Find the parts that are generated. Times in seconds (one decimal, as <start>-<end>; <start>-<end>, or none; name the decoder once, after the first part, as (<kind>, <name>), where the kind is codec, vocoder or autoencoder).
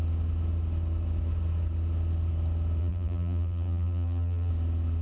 2.8-4.5 (vocoder, BigVGAN v2)